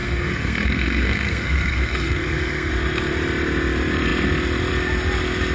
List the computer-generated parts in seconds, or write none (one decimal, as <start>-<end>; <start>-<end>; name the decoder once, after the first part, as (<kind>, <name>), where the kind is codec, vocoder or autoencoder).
0.0-2.7 (codec, SNAC)